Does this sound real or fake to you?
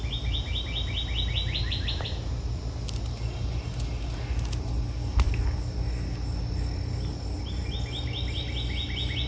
real